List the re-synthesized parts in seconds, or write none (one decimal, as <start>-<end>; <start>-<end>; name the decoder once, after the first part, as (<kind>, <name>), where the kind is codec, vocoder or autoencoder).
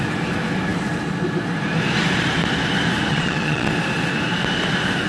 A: 3.1-3.7 (vocoder, Vocos)